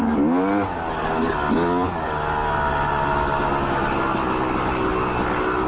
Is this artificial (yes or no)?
no